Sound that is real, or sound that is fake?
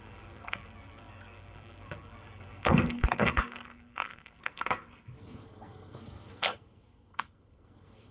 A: fake